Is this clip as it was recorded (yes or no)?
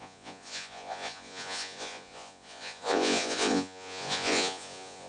no